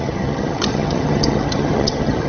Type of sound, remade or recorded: remade